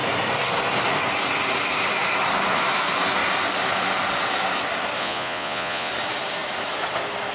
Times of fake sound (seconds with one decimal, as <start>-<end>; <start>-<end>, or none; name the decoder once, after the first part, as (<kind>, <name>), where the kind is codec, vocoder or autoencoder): 5.0-5.9 (vocoder, Vocos)